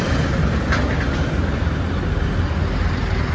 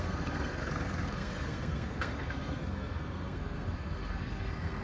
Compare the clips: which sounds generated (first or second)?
second